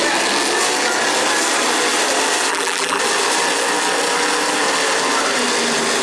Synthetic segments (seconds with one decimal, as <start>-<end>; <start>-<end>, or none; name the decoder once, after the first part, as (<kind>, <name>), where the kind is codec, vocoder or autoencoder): 2.5-3.0 (vocoder, BigVGAN v2)